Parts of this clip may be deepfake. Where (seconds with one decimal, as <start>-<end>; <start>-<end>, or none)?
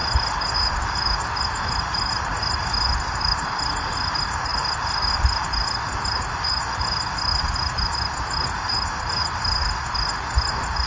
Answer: none